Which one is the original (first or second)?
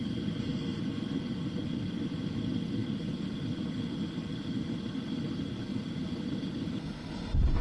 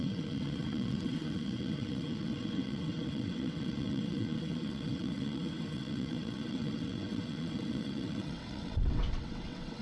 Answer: first